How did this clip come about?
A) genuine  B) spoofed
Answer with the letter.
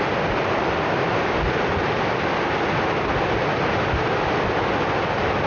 A